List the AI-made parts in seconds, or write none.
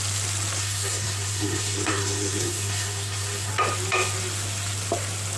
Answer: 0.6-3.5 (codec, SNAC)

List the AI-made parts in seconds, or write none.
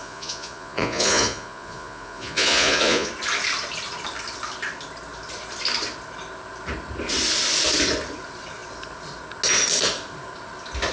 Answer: 0.0-3.1 (vocoder, Vocos)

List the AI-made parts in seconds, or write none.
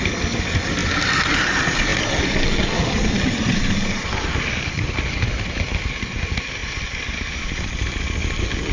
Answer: 0.8-1.3 (vocoder, BigVGAN v2); 1.9-3.7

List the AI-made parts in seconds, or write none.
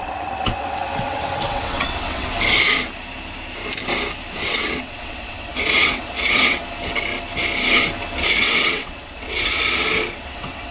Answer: 0.0-2.3 (vocoder, WaveNeXt); 4.3-6.6; 8.3-9.6; 10.2-10.7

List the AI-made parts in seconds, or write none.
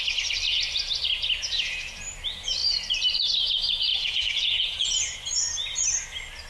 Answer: 3.9-5.2 (vocoder, Vocos)